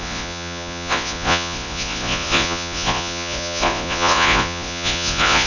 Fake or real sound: fake